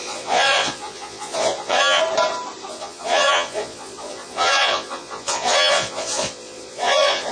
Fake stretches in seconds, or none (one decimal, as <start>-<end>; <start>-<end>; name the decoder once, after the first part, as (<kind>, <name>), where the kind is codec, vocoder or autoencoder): 0.0-2.0 (vocoder, Vocos); 2.7-7.3